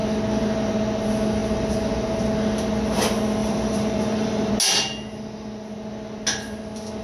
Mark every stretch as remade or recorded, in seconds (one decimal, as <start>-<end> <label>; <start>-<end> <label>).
0.0-3.4 recorded; 3.4-4.5 remade; 4.5-7.0 recorded